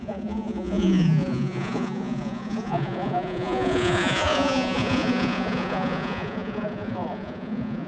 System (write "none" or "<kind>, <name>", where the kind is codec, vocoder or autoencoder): vocoder, Vocos